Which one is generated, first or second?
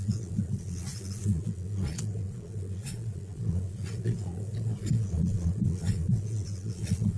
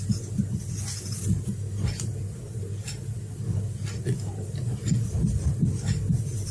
first